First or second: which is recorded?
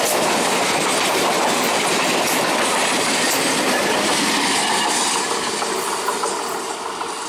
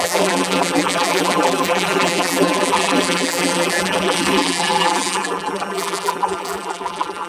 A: first